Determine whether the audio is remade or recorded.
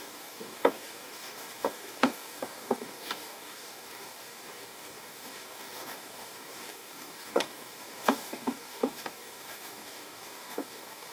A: remade